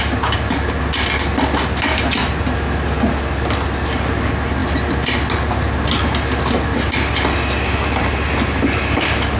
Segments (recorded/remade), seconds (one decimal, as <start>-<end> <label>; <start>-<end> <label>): 0.0-9.4 recorded

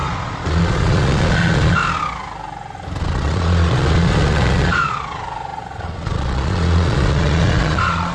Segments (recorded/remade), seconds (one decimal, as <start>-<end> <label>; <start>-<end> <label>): 0.0-1.8 remade; 1.8-3.0 recorded; 3.0-8.1 remade

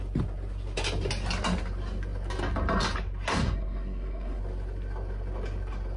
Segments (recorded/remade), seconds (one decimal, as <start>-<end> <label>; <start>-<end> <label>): 0.0-3.3 recorded; 3.3-4.4 remade; 4.4-6.0 recorded

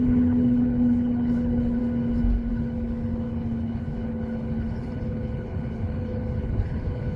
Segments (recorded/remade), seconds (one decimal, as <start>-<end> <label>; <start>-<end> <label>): 0.0-1.8 remade; 1.8-2.5 recorded; 2.5-7.2 remade

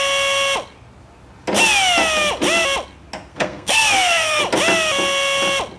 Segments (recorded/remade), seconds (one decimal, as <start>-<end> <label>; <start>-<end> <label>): 0.0-3.3 recorded; 3.3-4.4 remade; 4.4-5.8 recorded

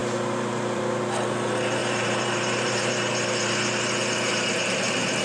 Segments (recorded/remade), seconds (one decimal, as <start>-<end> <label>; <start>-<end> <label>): 0.0-0.8 remade; 0.8-1.8 recorded; 1.8-5.2 remade

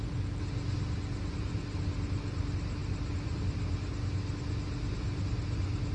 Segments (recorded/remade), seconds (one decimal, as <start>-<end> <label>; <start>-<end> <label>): 0.0-5.9 recorded

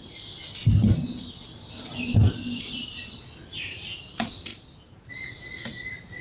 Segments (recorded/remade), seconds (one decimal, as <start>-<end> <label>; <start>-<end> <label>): 0.0-6.2 recorded